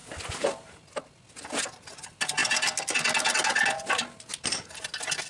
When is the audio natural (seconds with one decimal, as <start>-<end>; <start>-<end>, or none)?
0.9-5.3